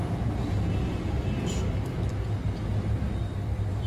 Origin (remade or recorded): recorded